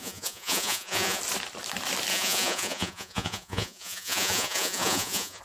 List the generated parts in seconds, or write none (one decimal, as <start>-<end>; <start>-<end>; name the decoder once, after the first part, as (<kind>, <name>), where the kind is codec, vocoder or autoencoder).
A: 0.0-1.2 (vocoder, Vocos); 2.1-5.4